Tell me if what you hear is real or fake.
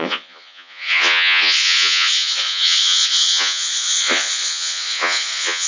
fake